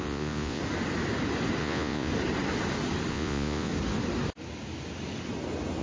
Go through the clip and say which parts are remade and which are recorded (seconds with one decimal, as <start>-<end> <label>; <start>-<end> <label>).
0.0-0.6 remade; 0.6-1.6 recorded; 1.6-2.1 remade; 2.1-3.1 recorded; 3.1-3.7 remade; 3.7-5.8 recorded